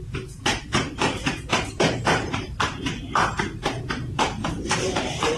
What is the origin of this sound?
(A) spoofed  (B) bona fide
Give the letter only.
A